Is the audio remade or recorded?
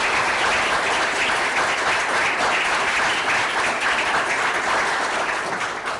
recorded